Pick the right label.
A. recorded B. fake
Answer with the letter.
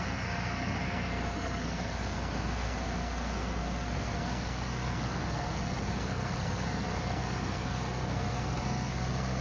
B